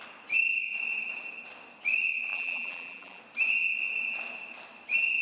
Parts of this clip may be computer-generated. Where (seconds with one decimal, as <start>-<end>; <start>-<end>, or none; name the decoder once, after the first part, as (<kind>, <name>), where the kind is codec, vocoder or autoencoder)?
2.3-3.2 (vocoder, BigVGAN v2)